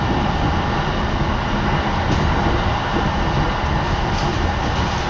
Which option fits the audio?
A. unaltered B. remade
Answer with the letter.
A